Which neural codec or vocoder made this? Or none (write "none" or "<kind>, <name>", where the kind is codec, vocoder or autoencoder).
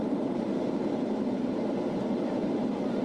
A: vocoder, BigVGAN v2